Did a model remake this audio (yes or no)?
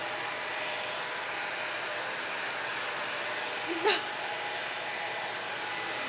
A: no